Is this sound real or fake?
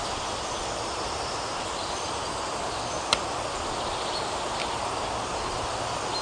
real